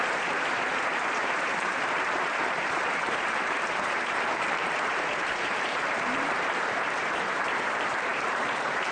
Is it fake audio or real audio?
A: fake